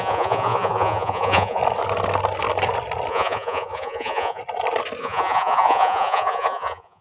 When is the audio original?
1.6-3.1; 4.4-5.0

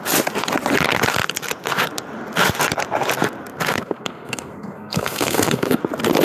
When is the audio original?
0.0-3.5; 5.8-6.2

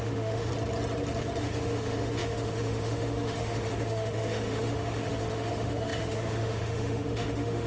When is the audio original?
0.5-1.4

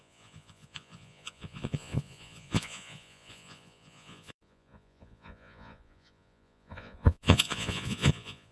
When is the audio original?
none

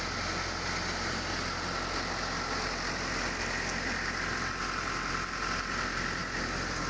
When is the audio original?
0.0-6.9

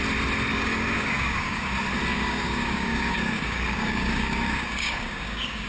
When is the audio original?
0.0-0.5; 1.7-2.1

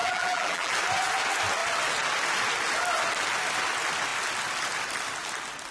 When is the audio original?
0.7-5.7